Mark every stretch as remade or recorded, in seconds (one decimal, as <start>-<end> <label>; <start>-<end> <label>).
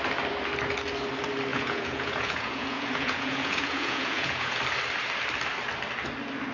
0.0-1.5 recorded; 1.5-4.6 remade; 4.6-6.5 recorded